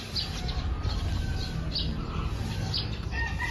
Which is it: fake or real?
real